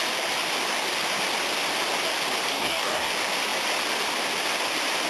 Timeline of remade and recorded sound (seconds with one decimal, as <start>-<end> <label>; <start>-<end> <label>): 0.0-2.5 recorded; 2.5-3.1 remade; 3.1-5.1 recorded